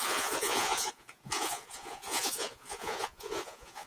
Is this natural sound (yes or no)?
no